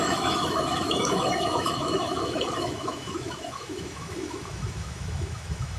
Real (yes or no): no